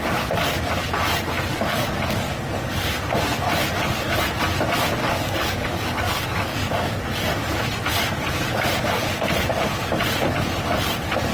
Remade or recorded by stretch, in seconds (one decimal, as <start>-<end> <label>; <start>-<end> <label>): 0.0-1.5 recorded; 1.5-2.3 remade; 2.3-5.0 recorded; 5.0-7.0 remade; 7.0-8.2 recorded; 8.2-8.7 remade; 8.7-11.3 recorded